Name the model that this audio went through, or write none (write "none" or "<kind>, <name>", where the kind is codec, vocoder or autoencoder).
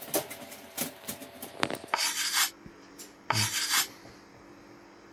vocoder, BigVGAN v2